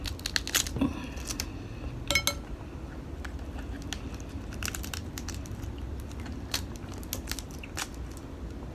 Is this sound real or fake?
real